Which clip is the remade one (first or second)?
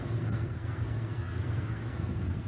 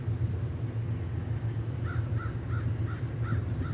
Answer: first